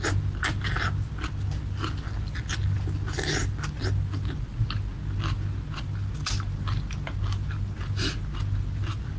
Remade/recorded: recorded